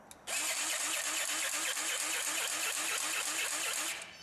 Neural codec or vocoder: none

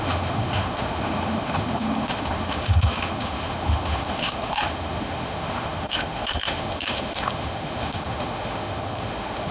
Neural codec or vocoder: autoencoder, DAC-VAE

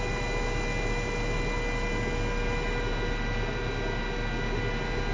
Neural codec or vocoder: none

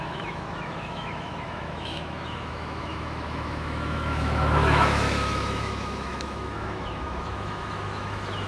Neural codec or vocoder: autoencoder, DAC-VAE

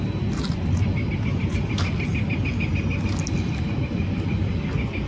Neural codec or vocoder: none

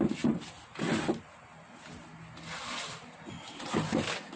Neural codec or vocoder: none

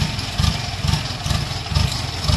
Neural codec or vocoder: none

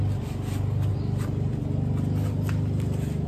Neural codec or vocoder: none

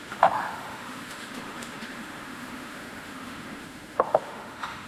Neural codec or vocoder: autoencoder, DAC-VAE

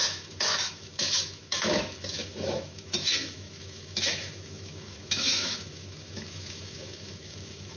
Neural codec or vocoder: autoencoder, DAC-VAE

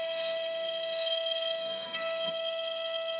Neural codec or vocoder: autoencoder, DAC-VAE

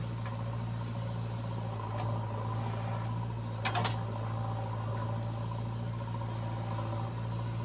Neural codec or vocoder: none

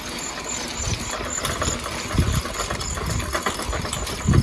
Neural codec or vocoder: none